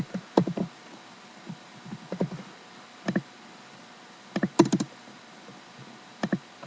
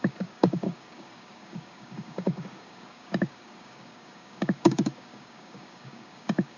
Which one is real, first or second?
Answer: first